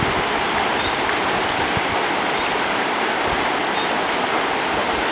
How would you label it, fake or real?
real